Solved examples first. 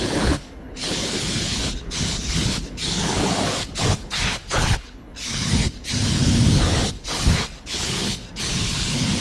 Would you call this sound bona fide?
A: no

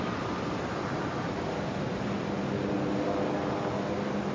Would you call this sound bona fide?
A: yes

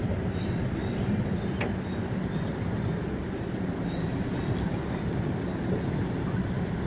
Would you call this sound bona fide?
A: yes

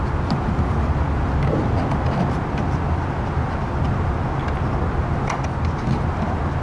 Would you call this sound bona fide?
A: yes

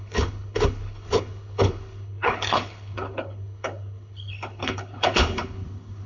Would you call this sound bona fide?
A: no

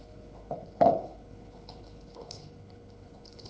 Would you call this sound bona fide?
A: no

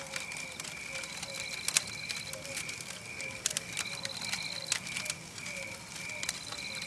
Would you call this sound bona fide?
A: yes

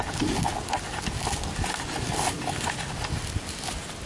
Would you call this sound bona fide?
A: yes